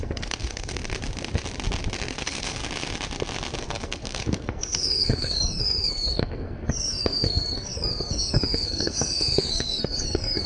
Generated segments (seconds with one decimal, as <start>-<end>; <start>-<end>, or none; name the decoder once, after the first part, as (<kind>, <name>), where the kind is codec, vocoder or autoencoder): 0.0-0.8 (codec, SNAC); 2.1-2.6; 3.6-10.5